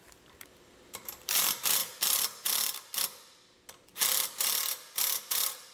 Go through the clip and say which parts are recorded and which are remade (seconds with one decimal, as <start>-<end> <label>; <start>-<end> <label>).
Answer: 0.0-1.8 remade; 1.8-5.2 recorded; 5.2-5.7 remade